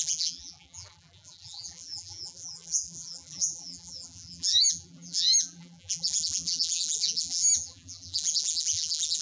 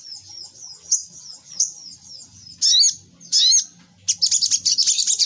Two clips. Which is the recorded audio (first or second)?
second